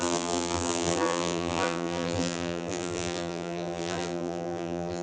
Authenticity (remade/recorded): remade